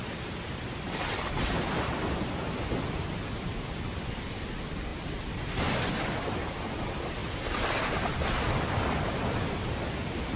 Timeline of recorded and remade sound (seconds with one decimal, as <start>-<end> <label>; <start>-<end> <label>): 0.0-10.4 remade